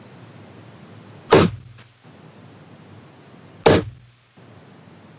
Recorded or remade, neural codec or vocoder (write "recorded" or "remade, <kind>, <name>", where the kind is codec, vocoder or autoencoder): recorded